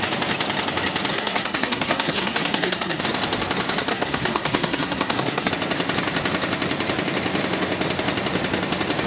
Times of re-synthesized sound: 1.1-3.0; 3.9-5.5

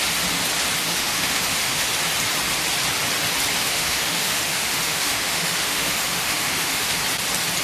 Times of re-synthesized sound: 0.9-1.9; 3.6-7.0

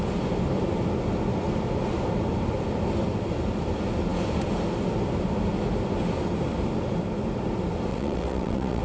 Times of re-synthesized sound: 7.9-8.8